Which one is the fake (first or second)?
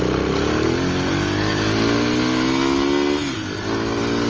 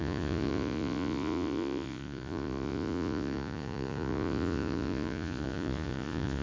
second